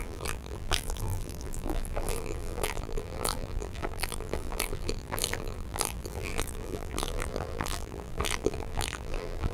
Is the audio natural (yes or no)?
no